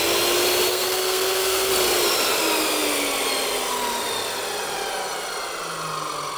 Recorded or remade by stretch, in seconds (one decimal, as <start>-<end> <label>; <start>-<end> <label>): 0.0-0.7 recorded; 0.7-1.7 remade; 1.7-6.4 recorded